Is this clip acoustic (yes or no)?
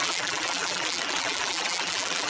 no